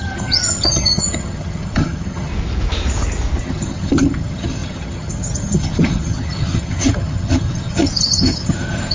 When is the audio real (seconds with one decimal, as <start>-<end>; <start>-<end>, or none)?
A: 2.3-3.4